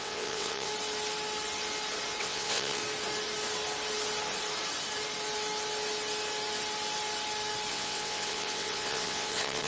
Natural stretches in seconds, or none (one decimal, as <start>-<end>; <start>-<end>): 0.7-2.2; 2.8-7.7